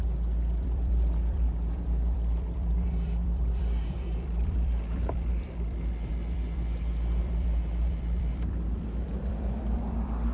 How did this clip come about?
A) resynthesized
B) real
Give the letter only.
A